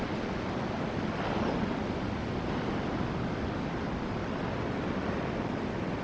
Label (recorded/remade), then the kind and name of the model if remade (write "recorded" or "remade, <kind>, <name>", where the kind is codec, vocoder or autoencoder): recorded